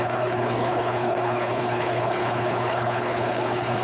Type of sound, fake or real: fake